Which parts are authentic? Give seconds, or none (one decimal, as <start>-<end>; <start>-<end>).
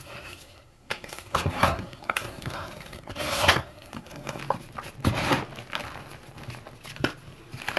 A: 4.4-7.8